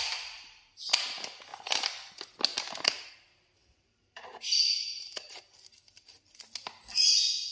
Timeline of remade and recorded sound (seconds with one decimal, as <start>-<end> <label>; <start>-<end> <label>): 0.0-2.5 recorded; 2.5-3.1 remade; 3.1-3.6 recorded; 3.6-5.4 remade; 5.4-7.5 recorded